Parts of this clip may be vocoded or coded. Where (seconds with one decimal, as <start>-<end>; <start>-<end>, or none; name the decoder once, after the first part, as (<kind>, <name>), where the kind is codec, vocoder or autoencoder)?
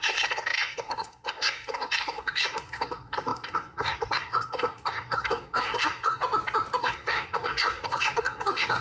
0.0-6.2 (codec, SNAC); 6.8-8.8